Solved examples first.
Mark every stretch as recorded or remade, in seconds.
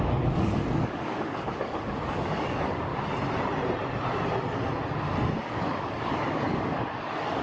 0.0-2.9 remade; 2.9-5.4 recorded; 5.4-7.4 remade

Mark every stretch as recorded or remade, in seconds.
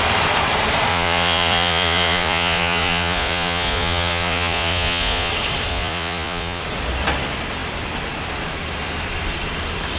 0.0-0.9 recorded; 0.9-5.3 remade; 5.3-5.7 recorded; 5.7-6.6 remade; 6.6-10.0 recorded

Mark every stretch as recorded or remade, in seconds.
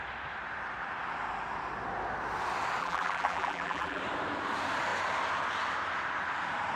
0.0-2.8 recorded; 2.8-4.0 remade; 4.0-6.8 recorded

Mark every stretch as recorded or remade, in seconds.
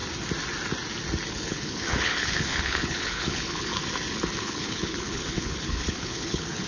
0.0-1.3 recorded; 1.3-3.7 remade; 3.7-4.4 recorded; 4.4-6.7 remade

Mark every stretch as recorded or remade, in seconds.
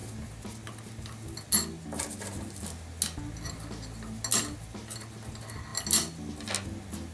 0.0-7.1 recorded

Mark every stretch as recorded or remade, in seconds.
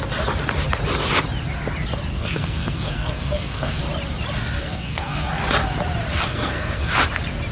0.0-2.1 recorded; 2.1-3.8 remade; 3.8-4.6 recorded; 4.6-5.3 remade; 5.3-6.1 recorded; 6.1-6.9 remade; 6.9-7.5 recorded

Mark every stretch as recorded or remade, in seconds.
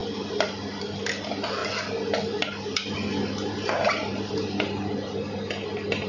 0.0-6.1 recorded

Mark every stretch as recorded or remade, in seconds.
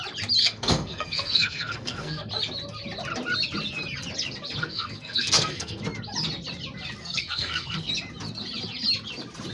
0.0-0.4 recorded; 0.4-2.3 remade; 2.3-4.6 recorded; 4.6-5.8 remade; 5.8-7.0 recorded; 7.0-7.9 remade; 7.9-9.5 recorded